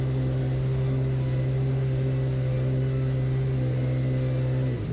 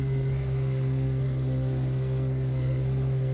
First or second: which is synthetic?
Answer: second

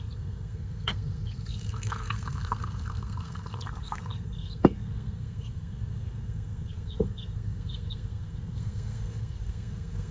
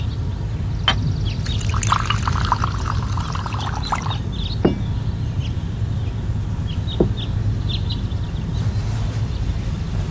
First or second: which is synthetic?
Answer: first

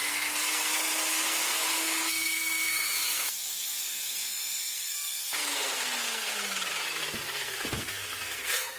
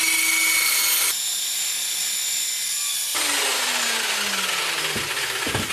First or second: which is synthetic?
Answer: first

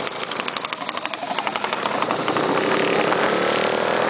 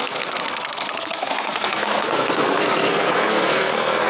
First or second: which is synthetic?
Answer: second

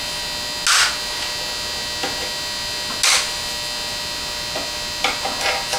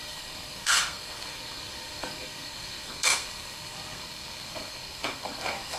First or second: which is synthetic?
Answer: second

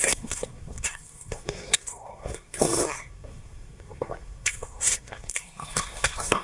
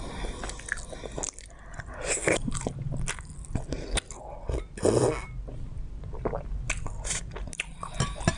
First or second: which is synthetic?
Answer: first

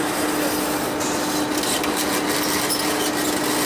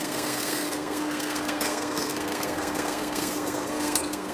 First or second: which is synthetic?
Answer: second